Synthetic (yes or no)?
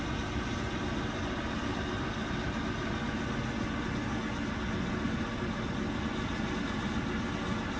no